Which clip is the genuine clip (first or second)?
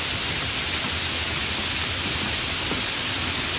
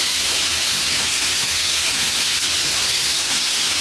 first